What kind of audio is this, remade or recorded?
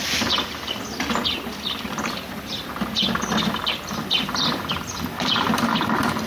recorded